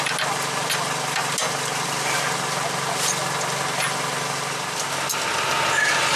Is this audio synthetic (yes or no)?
no